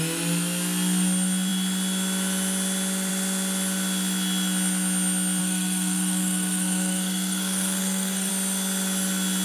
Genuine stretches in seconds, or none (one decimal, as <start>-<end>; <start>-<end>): 0.0-5.4; 8.3-9.4